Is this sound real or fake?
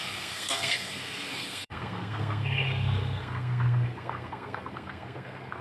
fake